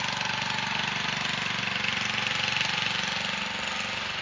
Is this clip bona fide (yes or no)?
yes